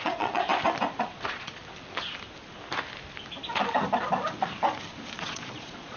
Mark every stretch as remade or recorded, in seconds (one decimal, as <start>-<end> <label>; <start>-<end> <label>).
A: 0.0-0.5 remade; 0.5-1.0 recorded; 1.0-1.6 remade; 1.6-5.2 recorded; 5.2-6.0 remade